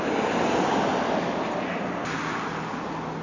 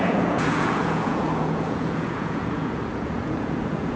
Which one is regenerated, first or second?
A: second